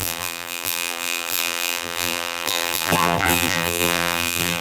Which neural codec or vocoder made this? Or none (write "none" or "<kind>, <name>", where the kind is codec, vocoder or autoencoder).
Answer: vocoder, BigVGAN v2